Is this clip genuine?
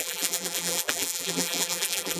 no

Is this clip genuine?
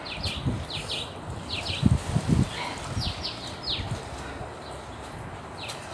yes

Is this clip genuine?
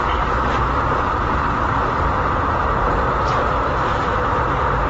no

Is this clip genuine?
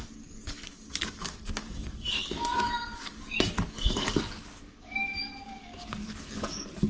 no